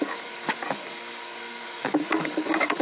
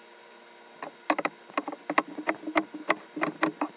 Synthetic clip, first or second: first